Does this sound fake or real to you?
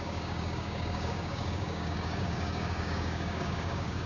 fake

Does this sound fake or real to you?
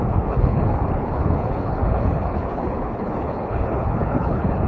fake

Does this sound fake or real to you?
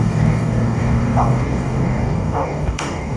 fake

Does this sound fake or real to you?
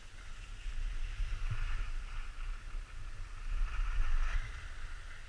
real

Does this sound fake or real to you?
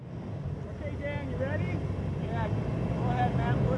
real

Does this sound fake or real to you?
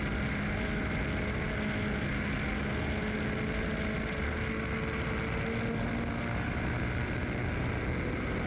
real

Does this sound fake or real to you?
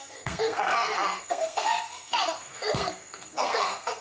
fake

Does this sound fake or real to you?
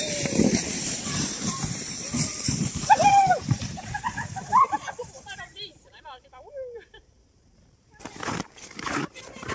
fake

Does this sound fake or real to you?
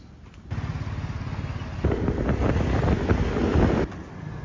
real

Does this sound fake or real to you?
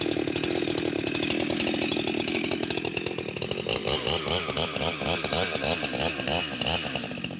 real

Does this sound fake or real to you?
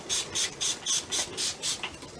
real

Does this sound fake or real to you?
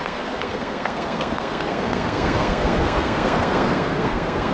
fake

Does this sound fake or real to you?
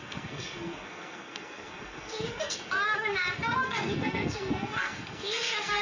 fake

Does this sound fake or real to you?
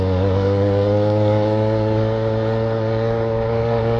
fake